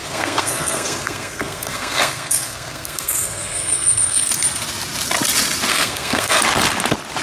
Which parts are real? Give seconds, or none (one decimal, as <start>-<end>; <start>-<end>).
4.3-5.7; 6.4-7.2